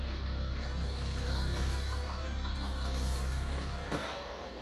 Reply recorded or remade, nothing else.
remade